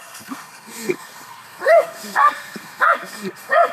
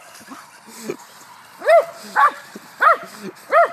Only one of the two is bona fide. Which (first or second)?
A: second